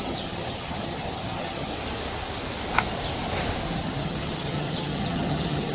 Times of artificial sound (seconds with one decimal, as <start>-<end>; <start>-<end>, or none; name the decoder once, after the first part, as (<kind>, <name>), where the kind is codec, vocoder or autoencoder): 0.0-1.7 (vocoder, HiFi-GAN); 3.8-5.7